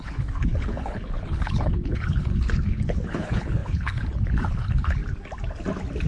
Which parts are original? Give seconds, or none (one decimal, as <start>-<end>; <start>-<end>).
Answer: 5.0-6.1